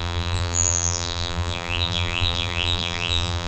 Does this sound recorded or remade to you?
remade